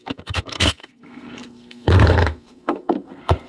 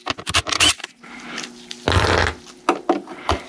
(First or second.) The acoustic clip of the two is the second